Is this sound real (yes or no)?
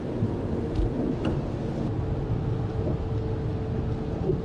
yes